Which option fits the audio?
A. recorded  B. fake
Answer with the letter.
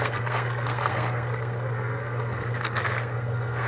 B